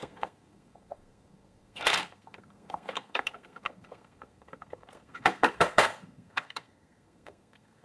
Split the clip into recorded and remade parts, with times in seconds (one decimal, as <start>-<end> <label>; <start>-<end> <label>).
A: 0.0-7.8 remade